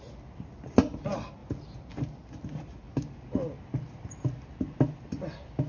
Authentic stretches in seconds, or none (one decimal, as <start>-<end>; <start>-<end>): 0.0-5.7